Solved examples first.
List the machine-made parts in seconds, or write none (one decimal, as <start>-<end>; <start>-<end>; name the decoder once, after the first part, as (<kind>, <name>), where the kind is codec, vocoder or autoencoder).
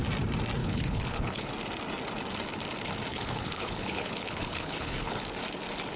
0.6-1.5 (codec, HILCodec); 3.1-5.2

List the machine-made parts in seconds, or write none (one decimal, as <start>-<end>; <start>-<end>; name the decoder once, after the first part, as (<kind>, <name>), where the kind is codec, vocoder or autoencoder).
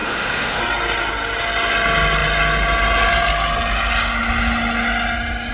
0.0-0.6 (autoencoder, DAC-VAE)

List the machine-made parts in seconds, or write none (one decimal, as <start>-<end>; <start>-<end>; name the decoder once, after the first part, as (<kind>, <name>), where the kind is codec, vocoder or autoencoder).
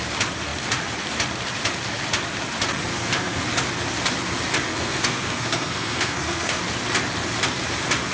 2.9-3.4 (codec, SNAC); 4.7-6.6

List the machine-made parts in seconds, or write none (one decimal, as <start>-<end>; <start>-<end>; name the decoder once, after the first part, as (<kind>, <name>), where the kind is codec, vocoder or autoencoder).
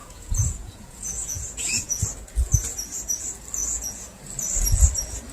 0.0-2.0 (vocoder, Vocos); 3.6-4.2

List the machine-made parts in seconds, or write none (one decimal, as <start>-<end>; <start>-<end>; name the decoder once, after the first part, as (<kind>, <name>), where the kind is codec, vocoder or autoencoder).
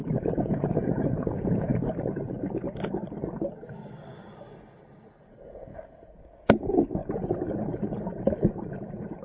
0.0-1.7 (vocoder, Vocos); 5.2-7.0; 8.7-9.2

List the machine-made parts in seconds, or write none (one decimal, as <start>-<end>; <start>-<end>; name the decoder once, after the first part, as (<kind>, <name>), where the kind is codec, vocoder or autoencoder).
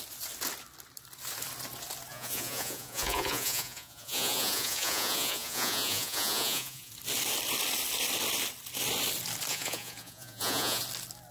2.1-6.9 (vocoder, Vocos); 9.5-10.8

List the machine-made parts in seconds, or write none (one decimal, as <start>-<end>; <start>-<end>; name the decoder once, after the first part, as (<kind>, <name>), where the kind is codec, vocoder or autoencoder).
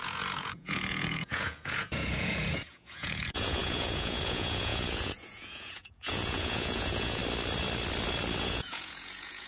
0.0-7.2 (vocoder, Vocos); 8.4-9.5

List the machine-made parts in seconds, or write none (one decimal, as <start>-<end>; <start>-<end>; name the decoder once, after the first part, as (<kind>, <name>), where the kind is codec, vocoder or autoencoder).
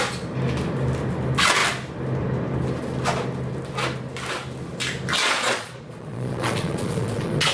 5.2-7.5 (vocoder, Vocos)